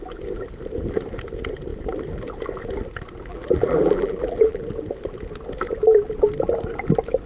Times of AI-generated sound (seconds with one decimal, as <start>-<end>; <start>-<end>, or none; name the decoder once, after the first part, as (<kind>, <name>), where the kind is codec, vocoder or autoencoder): 3.3-4.6 (vocoder, BigVGAN v2)